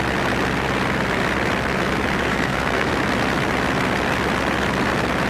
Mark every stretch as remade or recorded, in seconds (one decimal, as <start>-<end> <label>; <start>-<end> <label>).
0.0-2.3 recorded; 2.3-2.9 remade; 2.9-5.3 recorded

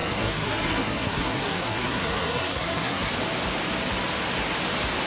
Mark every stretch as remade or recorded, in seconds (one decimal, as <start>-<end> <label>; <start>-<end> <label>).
0.0-3.1 remade; 3.1-5.1 recorded

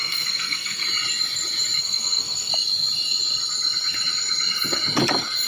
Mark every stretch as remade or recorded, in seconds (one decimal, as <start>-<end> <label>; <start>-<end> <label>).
0.0-0.8 remade; 0.8-1.8 recorded; 1.8-2.5 remade; 2.5-5.5 recorded

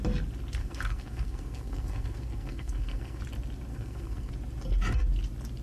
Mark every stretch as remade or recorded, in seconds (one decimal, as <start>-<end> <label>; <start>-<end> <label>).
0.0-0.6 recorded; 0.6-3.2 remade; 3.2-3.7 recorded; 3.7-4.3 remade; 4.3-5.6 recorded

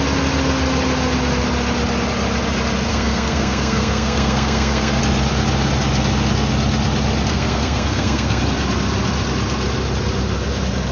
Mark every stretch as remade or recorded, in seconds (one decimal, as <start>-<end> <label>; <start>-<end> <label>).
0.0-2.9 recorded; 2.9-5.0 remade; 5.0-7.3 recorded; 7.3-8.4 remade; 8.4-10.9 recorded

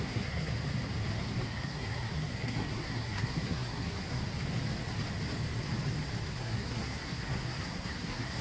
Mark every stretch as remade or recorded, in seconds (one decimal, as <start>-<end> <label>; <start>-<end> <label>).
0.0-0.5 remade; 0.5-1.5 recorded; 1.5-4.2 remade; 4.2-6.3 recorded; 6.3-8.4 remade

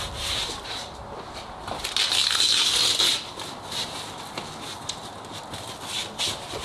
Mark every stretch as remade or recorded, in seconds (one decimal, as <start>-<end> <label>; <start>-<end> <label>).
0.0-6.6 recorded

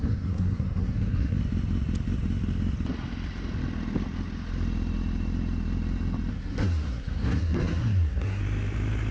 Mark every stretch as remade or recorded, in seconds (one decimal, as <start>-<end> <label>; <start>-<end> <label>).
0.0-1.4 remade; 1.4-6.3 recorded; 6.3-8.4 remade; 8.4-9.1 recorded